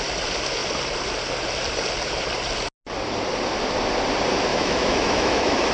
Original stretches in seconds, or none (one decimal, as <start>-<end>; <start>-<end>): 0.0-4.5